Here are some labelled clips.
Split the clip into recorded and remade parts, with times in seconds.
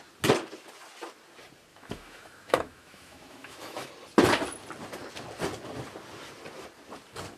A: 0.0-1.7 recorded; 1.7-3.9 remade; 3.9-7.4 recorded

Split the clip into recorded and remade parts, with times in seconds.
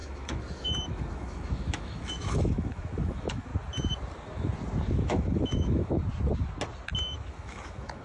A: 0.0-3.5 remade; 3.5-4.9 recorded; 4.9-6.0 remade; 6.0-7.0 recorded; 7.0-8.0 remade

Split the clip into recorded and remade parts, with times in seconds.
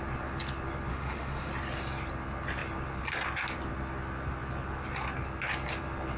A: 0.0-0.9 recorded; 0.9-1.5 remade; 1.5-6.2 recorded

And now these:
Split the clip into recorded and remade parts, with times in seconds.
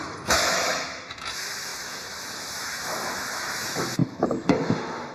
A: 0.0-5.1 remade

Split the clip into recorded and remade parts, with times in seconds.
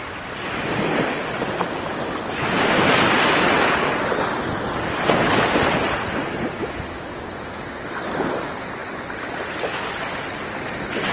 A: 0.0-6.6 recorded; 6.6-7.6 remade; 7.6-11.1 recorded